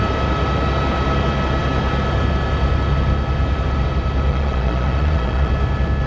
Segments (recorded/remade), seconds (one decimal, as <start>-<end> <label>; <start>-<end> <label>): 0.0-4.3 recorded; 4.3-5.5 remade; 5.5-6.1 recorded